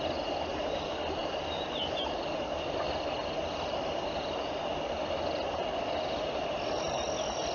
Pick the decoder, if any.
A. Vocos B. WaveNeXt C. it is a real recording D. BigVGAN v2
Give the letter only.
C